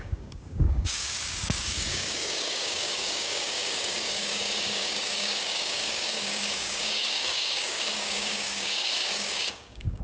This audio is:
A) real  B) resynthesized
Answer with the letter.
B